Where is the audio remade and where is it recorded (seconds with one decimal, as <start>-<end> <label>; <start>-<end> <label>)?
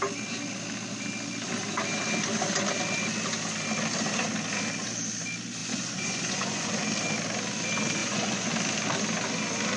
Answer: 0.0-5.6 recorded; 5.6-6.7 remade; 6.7-8.0 recorded; 8.0-8.5 remade; 8.5-9.8 recorded